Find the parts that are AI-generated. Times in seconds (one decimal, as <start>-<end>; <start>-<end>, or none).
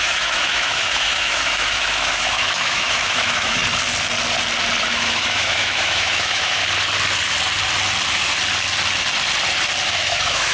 0.0-3.6; 4.8-6.6; 9.9-10.5